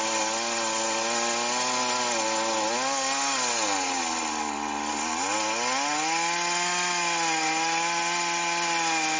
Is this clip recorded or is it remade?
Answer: recorded